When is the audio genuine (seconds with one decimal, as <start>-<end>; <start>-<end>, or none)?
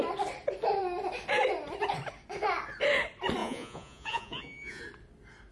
0.0-3.4; 4.8-5.5